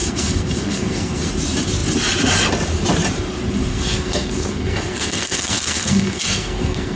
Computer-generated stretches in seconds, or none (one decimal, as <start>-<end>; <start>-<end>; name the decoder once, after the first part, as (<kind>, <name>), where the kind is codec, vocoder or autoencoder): 0.0-1.3 (codec, SNAC); 3.7-7.0

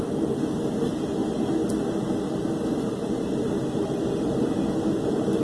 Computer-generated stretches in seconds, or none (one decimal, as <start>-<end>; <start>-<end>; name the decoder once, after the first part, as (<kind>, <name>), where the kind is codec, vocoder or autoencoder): none

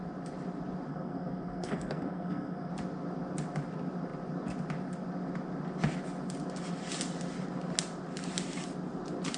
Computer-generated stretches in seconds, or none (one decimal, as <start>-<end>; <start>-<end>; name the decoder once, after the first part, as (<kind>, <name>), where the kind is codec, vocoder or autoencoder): 0.9-2.7 (codec, SNAC)

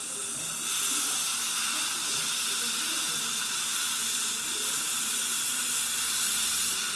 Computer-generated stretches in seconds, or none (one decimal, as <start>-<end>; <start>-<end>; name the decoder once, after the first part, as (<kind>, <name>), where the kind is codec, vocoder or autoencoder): none

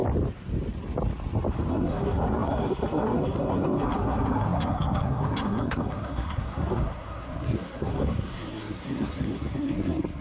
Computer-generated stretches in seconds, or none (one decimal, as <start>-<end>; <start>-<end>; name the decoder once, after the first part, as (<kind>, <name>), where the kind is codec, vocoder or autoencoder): 1.7-10.2 (codec, SNAC)